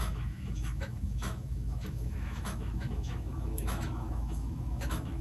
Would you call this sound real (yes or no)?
no